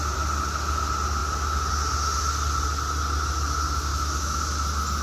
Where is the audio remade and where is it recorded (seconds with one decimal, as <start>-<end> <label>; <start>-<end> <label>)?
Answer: 0.0-3.9 recorded; 3.9-4.4 remade; 4.4-5.0 recorded